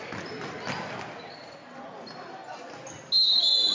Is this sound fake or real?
real